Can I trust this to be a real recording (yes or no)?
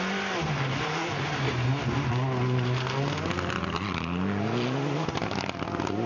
yes